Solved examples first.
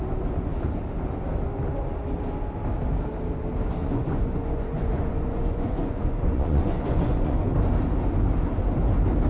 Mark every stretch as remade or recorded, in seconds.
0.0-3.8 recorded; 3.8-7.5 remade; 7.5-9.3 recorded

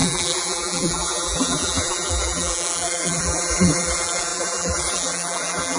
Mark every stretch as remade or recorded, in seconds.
0.0-5.8 remade

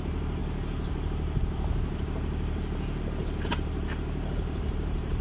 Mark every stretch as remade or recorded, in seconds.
0.0-0.4 remade; 0.4-3.5 recorded; 3.5-5.2 remade

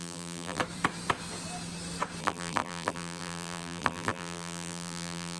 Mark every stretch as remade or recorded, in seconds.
0.0-0.6 remade; 0.6-2.2 recorded; 2.2-5.4 remade